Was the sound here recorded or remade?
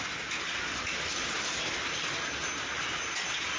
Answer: recorded